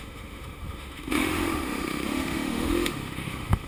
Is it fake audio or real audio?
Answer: fake